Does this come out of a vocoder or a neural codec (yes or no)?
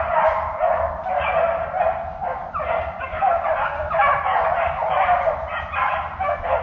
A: no